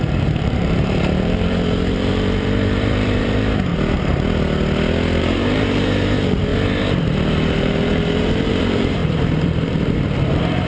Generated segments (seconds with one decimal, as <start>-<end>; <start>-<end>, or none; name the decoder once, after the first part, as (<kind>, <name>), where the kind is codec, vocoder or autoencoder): 0.0-3.7 (vocoder, BigVGAN v2); 5.2-10.7